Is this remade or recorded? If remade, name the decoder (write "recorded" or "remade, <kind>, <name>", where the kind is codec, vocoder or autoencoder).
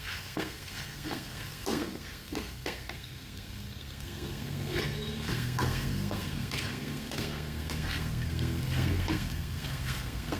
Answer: remade, codec, SNAC